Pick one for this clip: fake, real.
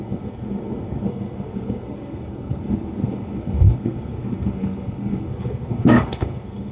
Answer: fake